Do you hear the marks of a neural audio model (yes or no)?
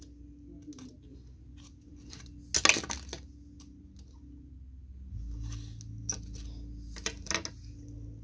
no